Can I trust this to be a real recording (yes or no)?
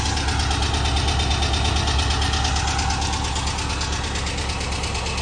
yes